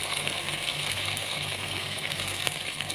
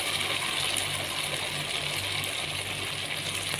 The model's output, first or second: first